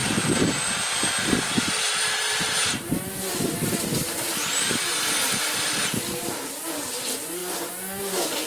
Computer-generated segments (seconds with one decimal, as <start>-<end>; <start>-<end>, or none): 0.0-4.3; 6.2-7.4; 8.0-8.5